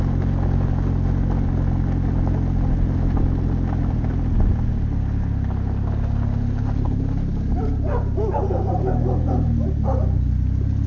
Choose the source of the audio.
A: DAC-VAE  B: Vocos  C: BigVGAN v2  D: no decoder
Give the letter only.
D